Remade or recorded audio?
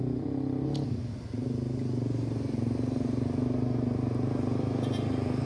recorded